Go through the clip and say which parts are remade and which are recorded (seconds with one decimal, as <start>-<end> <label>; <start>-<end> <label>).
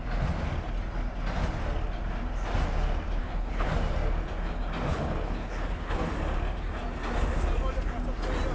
0.0-3.2 recorded; 3.2-3.7 remade; 3.7-4.9 recorded; 4.9-6.1 remade; 6.1-8.5 recorded